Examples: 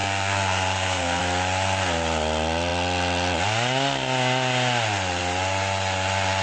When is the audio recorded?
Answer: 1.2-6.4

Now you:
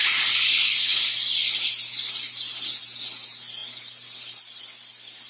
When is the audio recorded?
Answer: 0.0-5.3

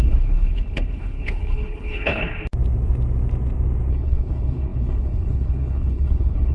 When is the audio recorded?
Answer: 2.2-3.9

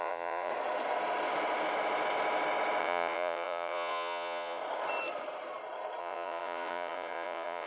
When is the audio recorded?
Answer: 0.5-2.8; 4.6-6.0

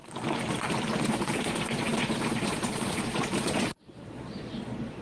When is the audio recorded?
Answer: 0.0-1.0

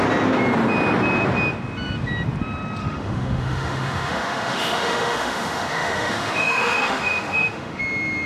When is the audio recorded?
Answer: 0.0-2.8; 7.8-8.3